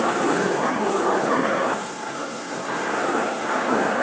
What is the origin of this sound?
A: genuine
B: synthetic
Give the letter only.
B